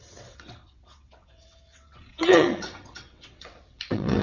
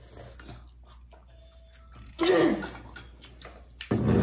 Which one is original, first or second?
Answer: second